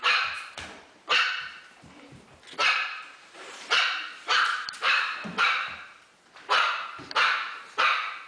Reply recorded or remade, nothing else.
remade